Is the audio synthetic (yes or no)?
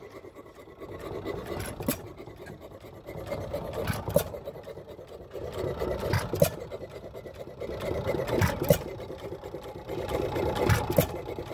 no